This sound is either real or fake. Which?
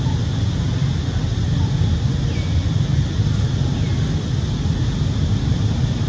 real